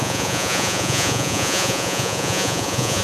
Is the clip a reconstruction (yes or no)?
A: yes